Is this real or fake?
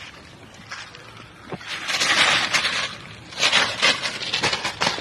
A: real